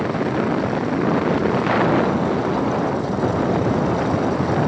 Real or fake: real